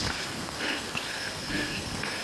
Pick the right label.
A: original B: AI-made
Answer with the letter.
B